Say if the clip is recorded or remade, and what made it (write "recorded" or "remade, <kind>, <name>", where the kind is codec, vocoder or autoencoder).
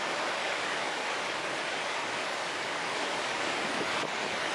remade, codec, DAC